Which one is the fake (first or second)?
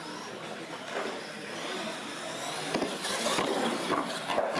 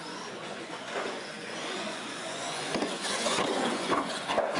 second